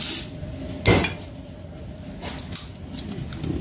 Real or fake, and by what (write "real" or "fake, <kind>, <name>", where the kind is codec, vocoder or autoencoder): real